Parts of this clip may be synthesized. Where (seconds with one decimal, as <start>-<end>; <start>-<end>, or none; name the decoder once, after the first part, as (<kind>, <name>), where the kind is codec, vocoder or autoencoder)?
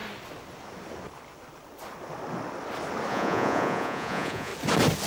3.1-4.5 (vocoder, Vocos)